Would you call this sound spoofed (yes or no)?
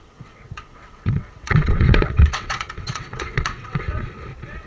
yes